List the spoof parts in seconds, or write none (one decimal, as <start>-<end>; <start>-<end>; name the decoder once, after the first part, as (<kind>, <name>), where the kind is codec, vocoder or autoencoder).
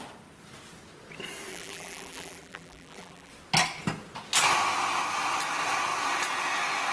1.5-3.3 (vocoder, BigVGAN v2)